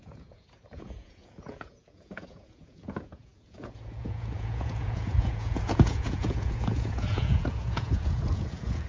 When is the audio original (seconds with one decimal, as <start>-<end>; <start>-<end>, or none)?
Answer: none